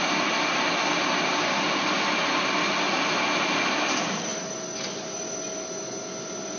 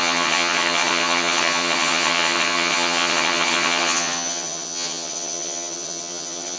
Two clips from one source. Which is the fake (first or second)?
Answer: second